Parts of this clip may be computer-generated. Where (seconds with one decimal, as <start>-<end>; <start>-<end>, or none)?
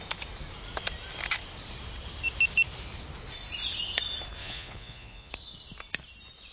4.4-5.3